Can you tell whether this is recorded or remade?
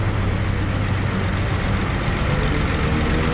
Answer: recorded